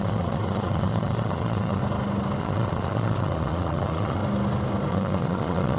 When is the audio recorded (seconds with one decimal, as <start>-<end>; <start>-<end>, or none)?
1.8-2.4; 4.2-4.9